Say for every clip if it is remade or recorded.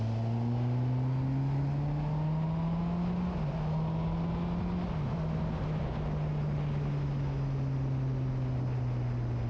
recorded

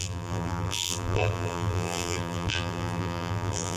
remade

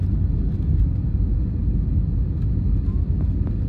recorded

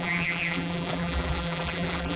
remade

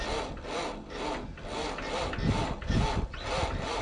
recorded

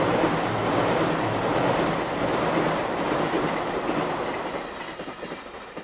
recorded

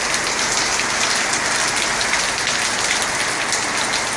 recorded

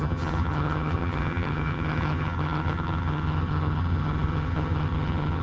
remade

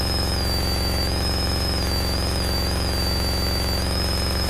remade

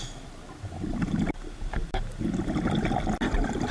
recorded